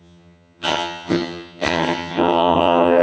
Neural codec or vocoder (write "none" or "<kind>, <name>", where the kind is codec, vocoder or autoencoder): vocoder, HiFi-GAN